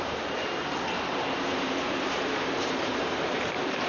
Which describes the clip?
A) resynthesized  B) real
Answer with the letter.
A